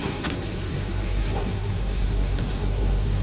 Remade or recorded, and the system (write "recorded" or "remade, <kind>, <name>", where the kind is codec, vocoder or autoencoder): remade, codec, SNAC